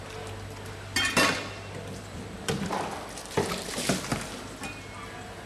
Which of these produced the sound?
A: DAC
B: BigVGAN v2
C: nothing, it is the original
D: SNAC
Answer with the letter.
C